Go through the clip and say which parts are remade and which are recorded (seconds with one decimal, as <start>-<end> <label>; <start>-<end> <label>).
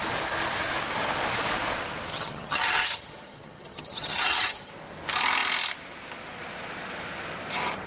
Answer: 0.0-2.1 recorded; 2.1-4.7 remade; 4.7-7.9 recorded